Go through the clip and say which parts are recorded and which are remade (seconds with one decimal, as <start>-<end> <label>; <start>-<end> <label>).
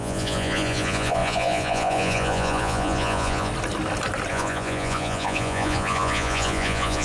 0.0-3.5 remade; 3.5-4.3 recorded; 4.3-7.0 remade